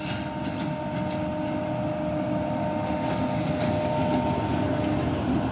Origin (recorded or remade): recorded